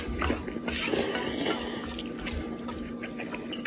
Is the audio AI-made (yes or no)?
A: no